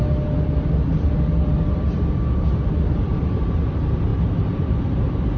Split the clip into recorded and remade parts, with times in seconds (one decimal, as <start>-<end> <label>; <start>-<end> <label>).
0.0-4.1 recorded; 4.1-4.8 remade; 4.8-5.4 recorded